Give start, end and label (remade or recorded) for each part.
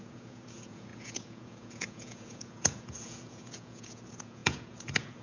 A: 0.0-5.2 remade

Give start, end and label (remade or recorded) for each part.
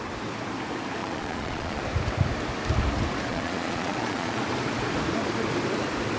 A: 0.0-1.0 recorded; 1.0-1.8 remade; 1.8-3.3 recorded; 3.3-4.4 remade; 4.4-6.2 recorded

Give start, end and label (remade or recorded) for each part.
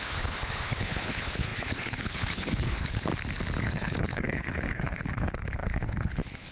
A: 0.0-3.1 remade; 3.1-3.6 recorded; 3.6-6.5 remade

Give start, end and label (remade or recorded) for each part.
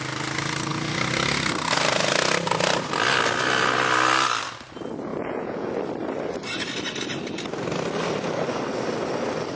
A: 0.0-5.1 recorded; 5.1-5.7 remade; 5.7-9.6 recorded